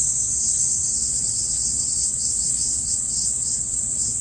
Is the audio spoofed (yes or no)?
yes